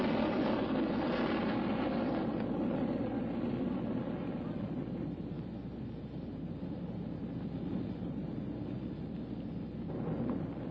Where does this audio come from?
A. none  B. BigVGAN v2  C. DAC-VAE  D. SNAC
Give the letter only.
A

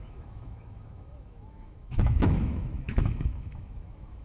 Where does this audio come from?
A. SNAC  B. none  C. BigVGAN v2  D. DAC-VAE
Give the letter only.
D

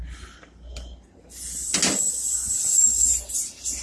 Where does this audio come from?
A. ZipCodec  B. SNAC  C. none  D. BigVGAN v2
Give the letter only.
C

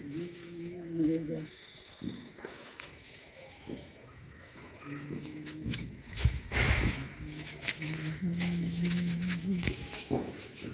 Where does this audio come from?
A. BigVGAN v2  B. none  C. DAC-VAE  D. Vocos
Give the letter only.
C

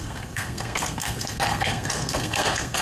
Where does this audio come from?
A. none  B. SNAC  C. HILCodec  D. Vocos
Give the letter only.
B